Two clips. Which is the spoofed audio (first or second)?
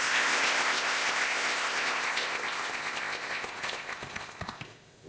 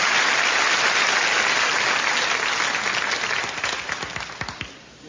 first